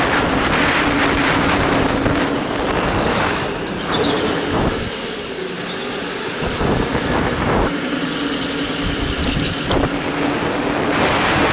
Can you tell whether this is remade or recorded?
recorded